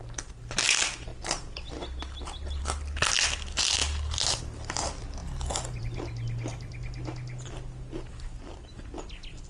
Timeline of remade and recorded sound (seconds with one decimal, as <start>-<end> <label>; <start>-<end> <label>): 0.0-9.5 recorded